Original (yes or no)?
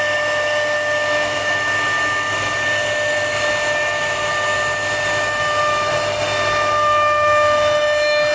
yes